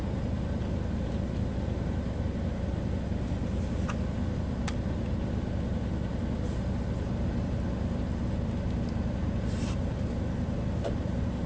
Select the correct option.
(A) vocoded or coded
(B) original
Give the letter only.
B